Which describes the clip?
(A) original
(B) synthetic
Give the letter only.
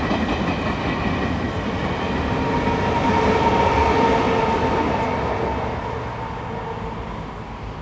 A